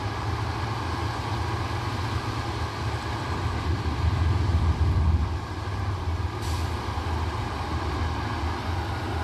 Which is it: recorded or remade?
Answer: remade